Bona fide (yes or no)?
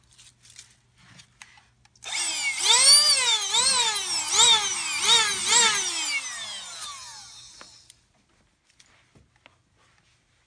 yes